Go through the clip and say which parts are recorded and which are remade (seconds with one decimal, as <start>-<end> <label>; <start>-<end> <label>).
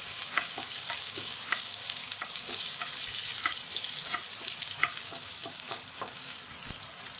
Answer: 0.0-2.9 remade; 2.9-4.6 recorded; 4.6-6.4 remade; 6.4-7.2 recorded